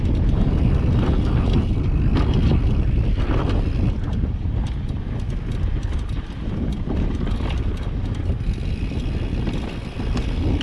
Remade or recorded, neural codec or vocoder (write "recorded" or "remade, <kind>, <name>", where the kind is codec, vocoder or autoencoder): recorded